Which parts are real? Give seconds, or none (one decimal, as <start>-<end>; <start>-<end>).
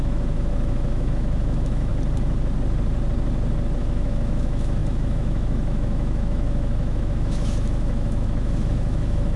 1.9-3.8